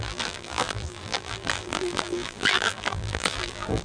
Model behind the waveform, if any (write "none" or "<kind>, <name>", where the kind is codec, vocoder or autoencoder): vocoder, BigVGAN v2